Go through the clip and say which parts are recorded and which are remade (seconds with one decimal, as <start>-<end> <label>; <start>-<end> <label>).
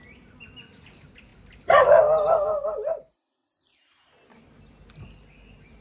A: 0.0-5.8 recorded